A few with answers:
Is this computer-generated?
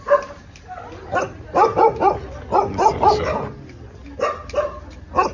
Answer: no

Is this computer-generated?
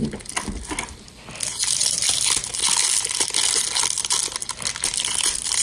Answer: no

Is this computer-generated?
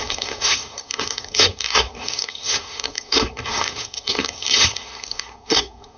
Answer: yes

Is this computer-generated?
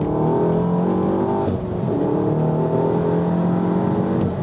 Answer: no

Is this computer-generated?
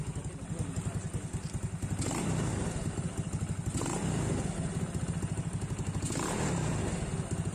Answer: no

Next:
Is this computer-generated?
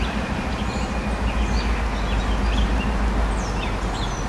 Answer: no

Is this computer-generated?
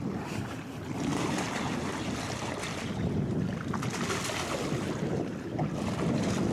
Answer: no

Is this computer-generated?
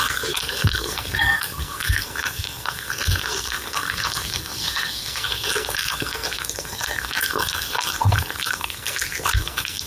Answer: yes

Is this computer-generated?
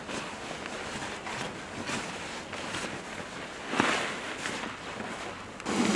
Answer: no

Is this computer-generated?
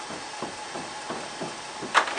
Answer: no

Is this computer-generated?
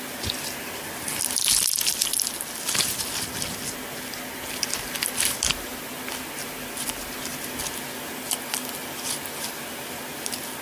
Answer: no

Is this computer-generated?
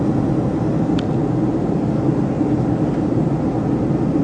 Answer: no